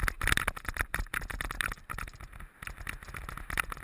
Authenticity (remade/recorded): recorded